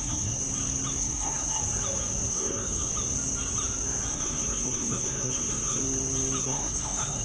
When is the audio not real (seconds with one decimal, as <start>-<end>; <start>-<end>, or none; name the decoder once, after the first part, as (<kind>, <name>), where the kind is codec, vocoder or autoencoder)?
0.0-0.4 (codec, SNAC); 1.0-1.6; 2.3-2.9; 4.1-5.8; 6.4-7.2